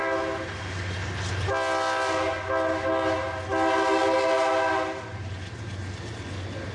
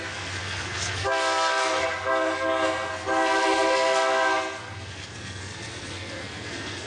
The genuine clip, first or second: first